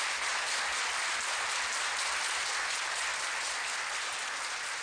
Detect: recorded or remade recorded